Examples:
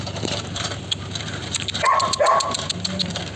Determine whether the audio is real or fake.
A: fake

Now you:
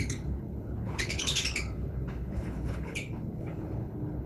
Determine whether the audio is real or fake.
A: fake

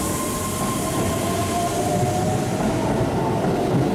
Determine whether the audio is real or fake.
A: real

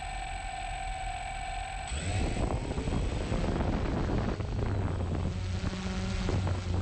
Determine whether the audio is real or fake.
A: real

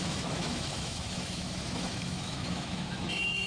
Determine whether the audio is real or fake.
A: fake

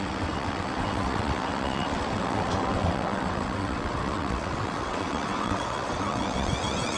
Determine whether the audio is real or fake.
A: fake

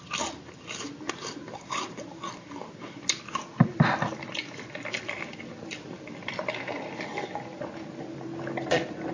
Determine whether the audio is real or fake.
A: real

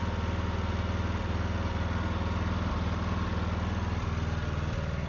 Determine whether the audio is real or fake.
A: real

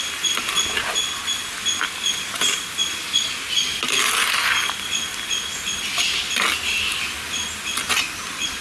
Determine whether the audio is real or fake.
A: real